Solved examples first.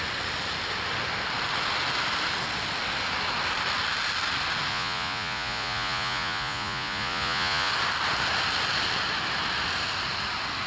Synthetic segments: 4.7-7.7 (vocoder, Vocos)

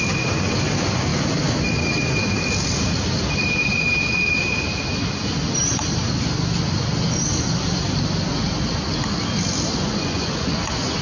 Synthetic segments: 9.8-11.0 (vocoder, Vocos)

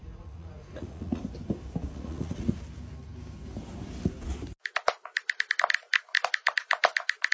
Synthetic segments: 0.0-1.2 (vocoder, Vocos); 1.9-2.6

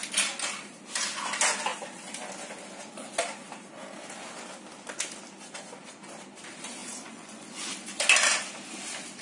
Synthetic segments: 6.8-7.7 (vocoder, Vocos)

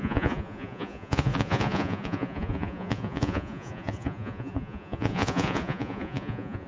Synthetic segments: 0.0-6.7 (vocoder, Vocos)

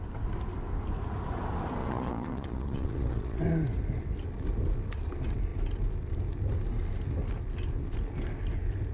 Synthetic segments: 1.8-3.4 (vocoder, Vocos)

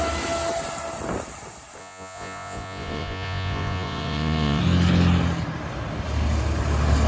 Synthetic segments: 1.8-4.6 (vocoder, Vocos)